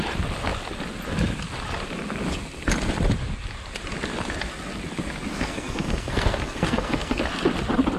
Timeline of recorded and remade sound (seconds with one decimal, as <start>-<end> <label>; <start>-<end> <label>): 0.0-5.3 recorded; 5.3-7.2 remade; 7.2-8.0 recorded